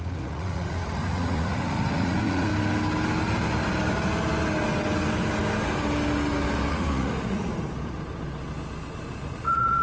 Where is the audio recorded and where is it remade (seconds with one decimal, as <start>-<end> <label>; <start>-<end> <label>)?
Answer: 0.0-2.5 remade; 2.5-6.7 recorded; 6.7-7.5 remade; 7.5-9.3 recorded; 9.3-9.8 remade